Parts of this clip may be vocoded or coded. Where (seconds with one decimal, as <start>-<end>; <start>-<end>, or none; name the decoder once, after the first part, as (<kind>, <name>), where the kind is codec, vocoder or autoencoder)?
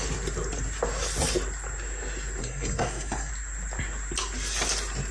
2.4-3.3 (codec, SNAC)